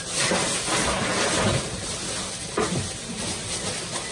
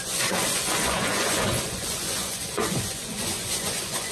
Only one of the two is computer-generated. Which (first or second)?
second